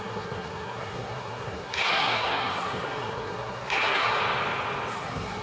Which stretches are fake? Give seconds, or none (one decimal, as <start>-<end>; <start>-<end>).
0.0-4.2; 4.9-5.4